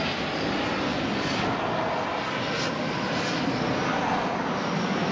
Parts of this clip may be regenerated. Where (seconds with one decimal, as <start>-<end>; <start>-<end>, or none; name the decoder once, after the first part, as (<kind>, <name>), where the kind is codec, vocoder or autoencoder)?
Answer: none